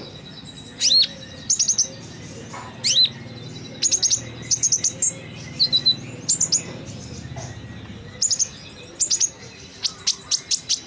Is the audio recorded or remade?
recorded